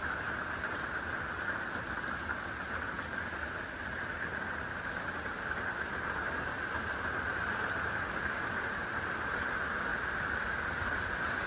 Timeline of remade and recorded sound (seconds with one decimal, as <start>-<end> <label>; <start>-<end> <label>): 0.0-11.5 recorded

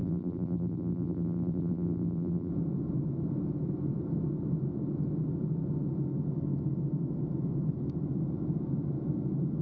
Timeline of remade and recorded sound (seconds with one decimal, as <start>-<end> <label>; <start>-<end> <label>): 0.0-2.5 remade; 2.5-9.6 recorded